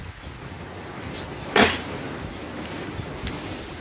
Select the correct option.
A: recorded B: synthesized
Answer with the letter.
A